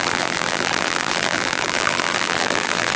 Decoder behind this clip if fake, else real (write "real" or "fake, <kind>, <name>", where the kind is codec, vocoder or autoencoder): fake, vocoder, BigVGAN v2